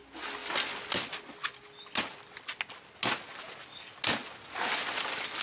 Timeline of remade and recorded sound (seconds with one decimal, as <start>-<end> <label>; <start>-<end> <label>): 0.0-5.4 recorded